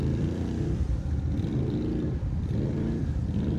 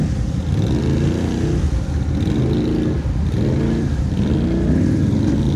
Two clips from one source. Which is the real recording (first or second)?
second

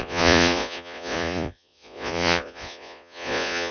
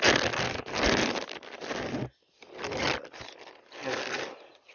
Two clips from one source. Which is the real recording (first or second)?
second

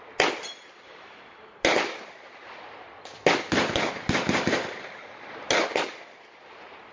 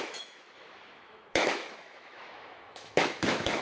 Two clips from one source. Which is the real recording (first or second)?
first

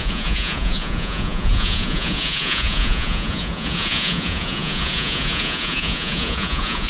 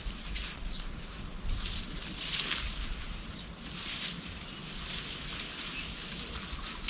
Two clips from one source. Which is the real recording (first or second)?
second